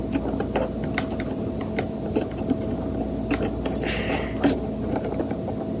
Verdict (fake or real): real